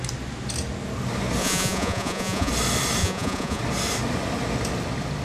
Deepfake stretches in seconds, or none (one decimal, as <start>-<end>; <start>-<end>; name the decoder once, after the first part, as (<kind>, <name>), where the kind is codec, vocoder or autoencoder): 1.4-2.5 (vocoder, Vocos); 3.0-3.6